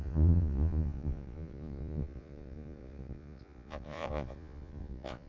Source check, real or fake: fake